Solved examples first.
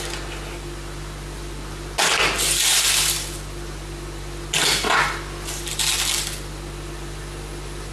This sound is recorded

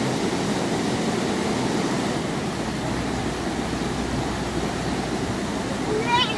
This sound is recorded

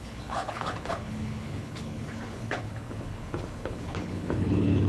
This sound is remade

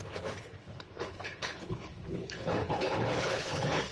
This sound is remade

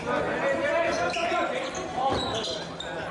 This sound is recorded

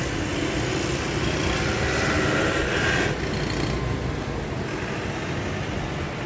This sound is recorded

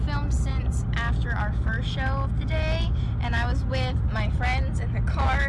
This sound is recorded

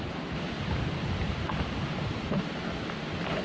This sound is recorded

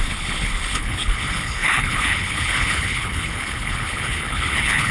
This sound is remade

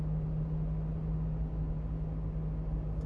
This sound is recorded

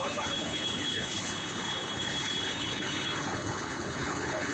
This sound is remade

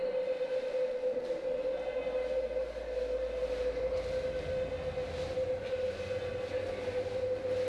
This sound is recorded